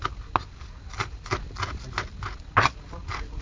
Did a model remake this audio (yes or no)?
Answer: no